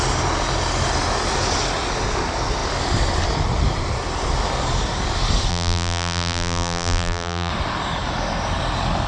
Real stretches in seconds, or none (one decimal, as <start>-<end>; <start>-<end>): 0.0-5.5; 7.5-9.1